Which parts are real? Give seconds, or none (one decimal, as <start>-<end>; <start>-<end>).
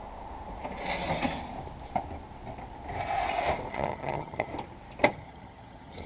0.0-3.7; 4.5-5.1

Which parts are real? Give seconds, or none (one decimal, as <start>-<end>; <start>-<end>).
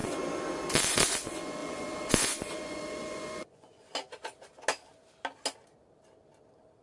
0.0-0.9; 3.9-6.8